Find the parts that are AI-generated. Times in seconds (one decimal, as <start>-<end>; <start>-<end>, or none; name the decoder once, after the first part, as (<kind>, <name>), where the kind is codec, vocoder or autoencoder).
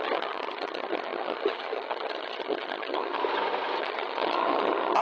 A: 0.0-3.2 (vocoder, HiFi-GAN); 3.8-5.0